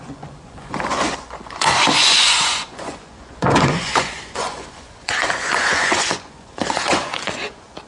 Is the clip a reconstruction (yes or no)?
yes